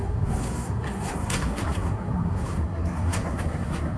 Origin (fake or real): fake